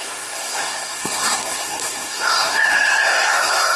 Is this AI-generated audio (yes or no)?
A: yes